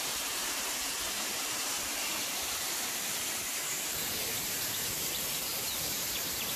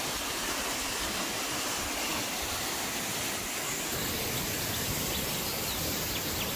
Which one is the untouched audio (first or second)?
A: second